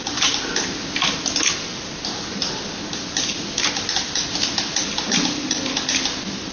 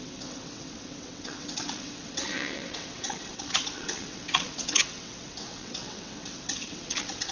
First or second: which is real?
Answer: first